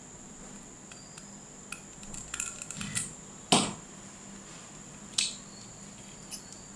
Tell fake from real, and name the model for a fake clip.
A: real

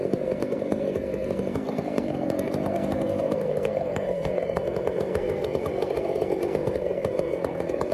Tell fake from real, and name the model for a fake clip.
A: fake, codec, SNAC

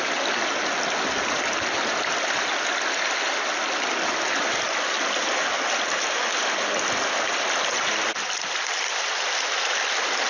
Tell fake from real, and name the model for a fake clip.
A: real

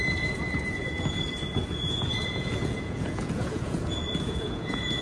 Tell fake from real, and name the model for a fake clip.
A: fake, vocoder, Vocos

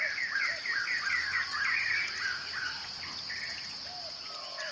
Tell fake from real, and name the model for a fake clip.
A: real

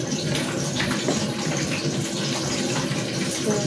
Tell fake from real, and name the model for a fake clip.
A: real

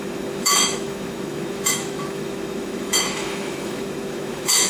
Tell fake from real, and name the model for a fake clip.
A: fake, autoencoder, DAC-VAE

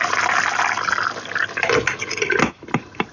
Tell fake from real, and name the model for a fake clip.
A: real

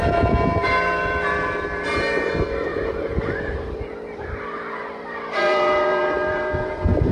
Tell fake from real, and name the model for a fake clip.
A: fake, vocoder, BigVGAN v2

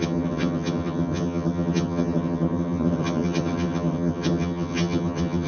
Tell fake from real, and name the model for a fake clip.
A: fake, vocoder, HiFi-GAN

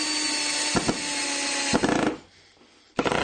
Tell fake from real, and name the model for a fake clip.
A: real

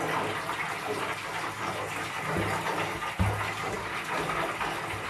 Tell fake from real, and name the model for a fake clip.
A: real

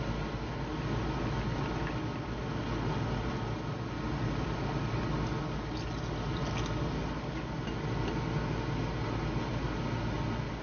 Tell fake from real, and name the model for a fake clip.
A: real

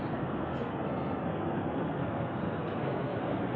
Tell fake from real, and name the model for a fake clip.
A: fake, codec, SNAC